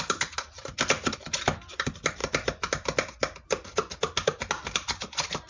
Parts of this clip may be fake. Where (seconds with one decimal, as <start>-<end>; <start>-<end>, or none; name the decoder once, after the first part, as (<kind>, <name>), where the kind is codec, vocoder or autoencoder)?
none